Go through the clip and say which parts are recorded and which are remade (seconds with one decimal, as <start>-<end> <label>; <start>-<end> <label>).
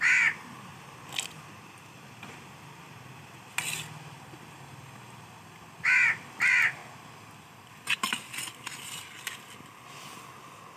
0.0-10.8 recorded